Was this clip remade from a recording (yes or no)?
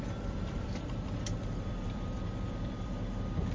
yes